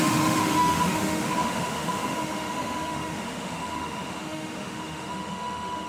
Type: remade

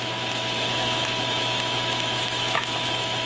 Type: remade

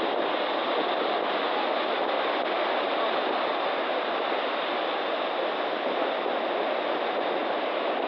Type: recorded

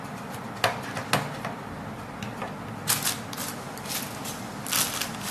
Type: recorded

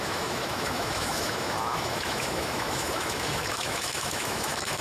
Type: remade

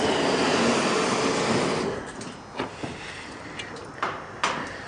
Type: recorded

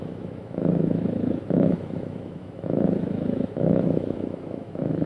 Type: remade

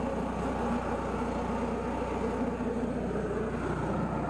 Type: recorded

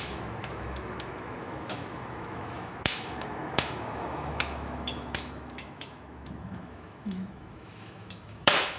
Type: remade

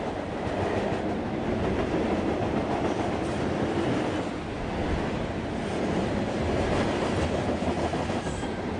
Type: recorded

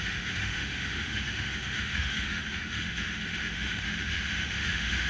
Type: remade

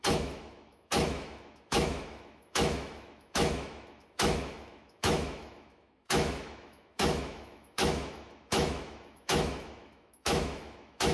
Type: remade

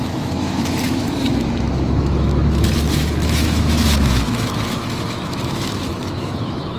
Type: remade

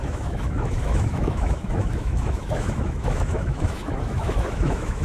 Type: remade